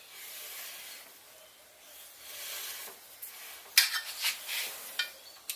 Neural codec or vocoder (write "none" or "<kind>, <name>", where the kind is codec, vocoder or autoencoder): none